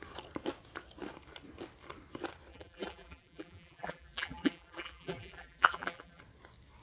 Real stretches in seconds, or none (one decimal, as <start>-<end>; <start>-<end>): 0.0-2.5; 6.2-6.8